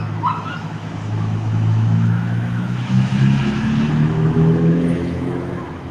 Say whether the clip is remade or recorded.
remade